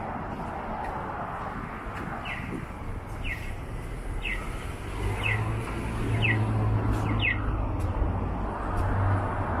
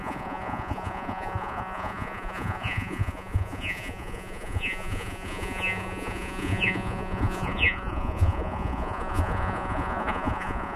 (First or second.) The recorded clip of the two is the first